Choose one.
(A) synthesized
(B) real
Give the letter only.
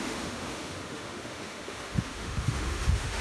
A